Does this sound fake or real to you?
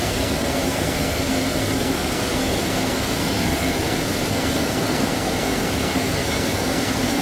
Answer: fake